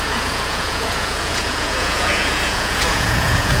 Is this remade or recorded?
remade